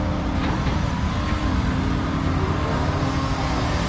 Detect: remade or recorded recorded